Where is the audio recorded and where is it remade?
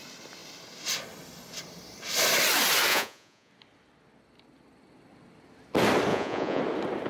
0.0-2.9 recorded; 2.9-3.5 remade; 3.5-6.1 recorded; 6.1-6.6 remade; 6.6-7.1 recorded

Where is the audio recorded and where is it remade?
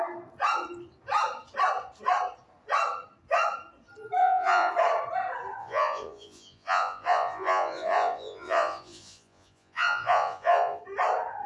0.0-4.2 recorded; 4.2-4.7 remade; 4.7-5.6 recorded; 5.6-10.8 remade; 10.8-11.5 recorded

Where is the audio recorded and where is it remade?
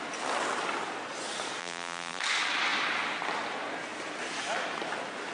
0.0-1.6 recorded; 1.6-2.2 remade; 2.2-5.3 recorded